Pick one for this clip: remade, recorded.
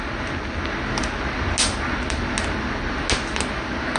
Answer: recorded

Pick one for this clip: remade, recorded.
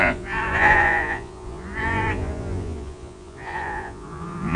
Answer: remade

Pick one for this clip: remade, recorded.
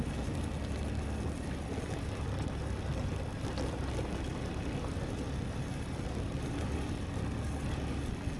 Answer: recorded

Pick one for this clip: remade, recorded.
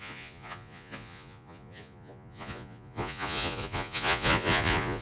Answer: remade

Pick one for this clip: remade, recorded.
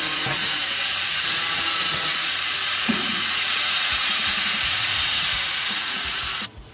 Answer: remade